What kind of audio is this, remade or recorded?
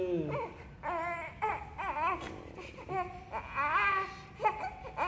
recorded